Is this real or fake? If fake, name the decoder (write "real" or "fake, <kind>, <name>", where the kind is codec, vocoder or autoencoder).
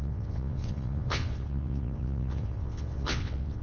fake, vocoder, WaveNeXt